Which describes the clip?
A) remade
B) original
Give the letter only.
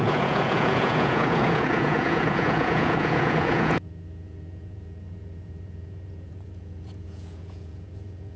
A